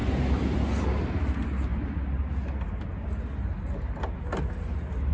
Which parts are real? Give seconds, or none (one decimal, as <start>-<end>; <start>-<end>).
0.0-5.1